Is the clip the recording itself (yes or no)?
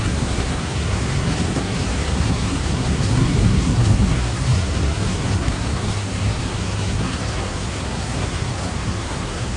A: no